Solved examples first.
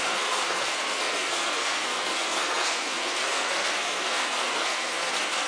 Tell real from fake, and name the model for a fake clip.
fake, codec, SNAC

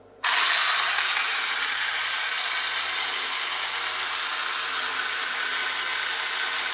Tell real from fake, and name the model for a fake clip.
real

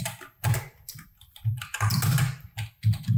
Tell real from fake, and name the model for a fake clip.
real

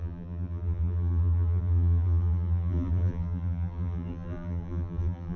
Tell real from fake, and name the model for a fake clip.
fake, vocoder, BigVGAN v2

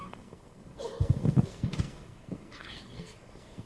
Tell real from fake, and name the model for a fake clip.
fake, codec, SNAC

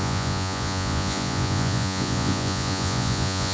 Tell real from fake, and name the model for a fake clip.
fake, vocoder, Vocos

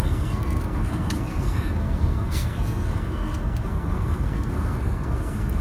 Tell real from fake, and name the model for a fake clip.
fake, codec, SNAC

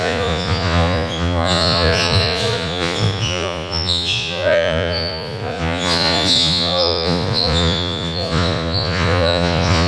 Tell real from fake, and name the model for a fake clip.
fake, vocoder, Vocos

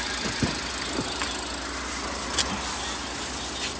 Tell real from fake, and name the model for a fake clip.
real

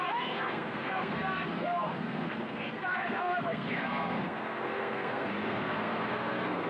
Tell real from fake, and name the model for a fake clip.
fake, codec, SNAC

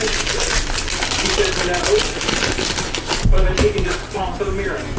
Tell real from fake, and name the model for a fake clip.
real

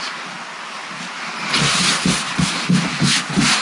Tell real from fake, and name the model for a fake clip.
real